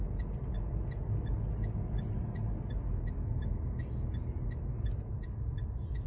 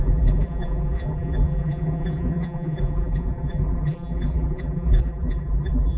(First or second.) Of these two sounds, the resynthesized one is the second